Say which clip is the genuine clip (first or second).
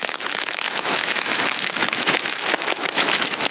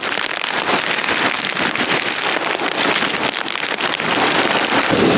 second